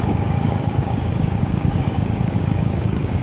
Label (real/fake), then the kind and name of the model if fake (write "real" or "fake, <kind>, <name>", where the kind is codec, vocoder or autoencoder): fake, codec, DAC